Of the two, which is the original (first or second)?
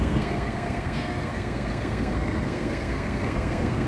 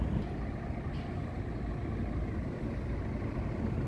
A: second